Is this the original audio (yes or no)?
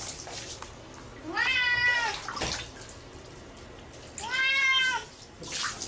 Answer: yes